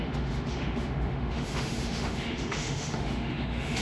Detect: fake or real fake